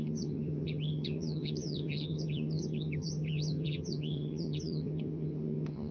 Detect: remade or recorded remade